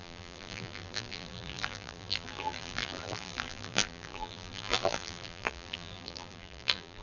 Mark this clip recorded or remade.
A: remade